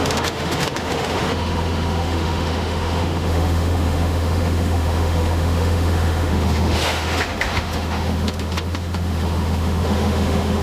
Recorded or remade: remade